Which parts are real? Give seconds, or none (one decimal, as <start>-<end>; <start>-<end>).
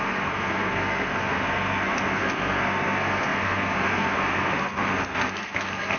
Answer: none